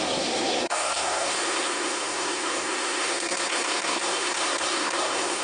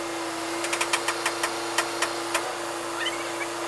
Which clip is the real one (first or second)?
second